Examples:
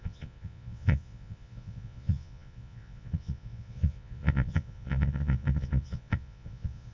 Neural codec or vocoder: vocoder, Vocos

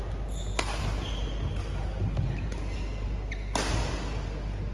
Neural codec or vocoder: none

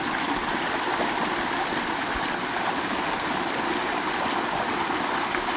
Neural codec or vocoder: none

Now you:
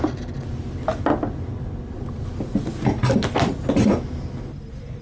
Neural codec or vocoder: none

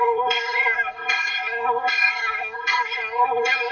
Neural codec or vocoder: codec, SNAC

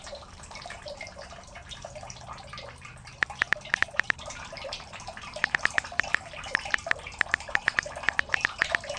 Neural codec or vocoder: vocoder, BigVGAN v2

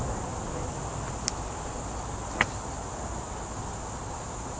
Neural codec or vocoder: none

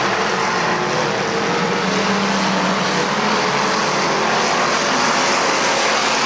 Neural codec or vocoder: none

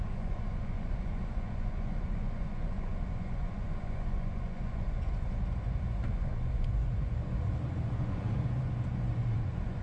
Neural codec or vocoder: vocoder, Vocos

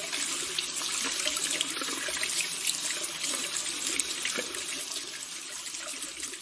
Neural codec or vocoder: none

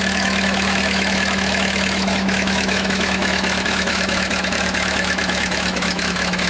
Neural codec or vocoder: autoencoder, DAC-VAE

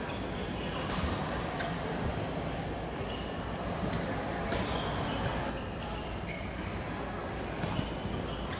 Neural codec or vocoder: none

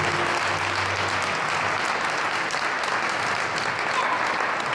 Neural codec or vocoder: none